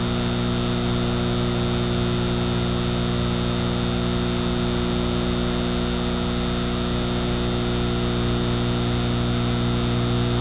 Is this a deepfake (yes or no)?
no